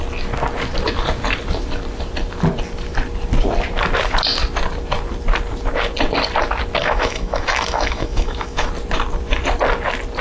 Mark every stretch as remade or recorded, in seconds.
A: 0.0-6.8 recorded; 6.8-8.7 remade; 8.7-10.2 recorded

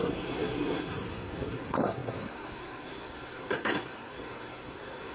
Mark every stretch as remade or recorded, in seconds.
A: 0.0-5.1 remade

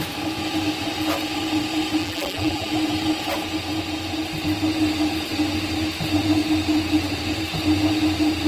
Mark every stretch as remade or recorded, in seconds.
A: 0.0-2.0 recorded; 2.0-2.7 remade; 2.7-8.5 recorded

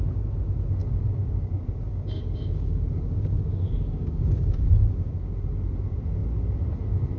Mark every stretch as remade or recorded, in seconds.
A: 0.0-0.8 recorded; 0.8-5.1 remade; 5.1-7.2 recorded

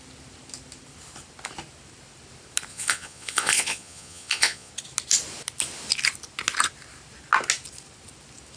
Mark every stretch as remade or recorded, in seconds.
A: 0.0-2.7 recorded; 2.7-4.7 remade; 4.7-8.6 recorded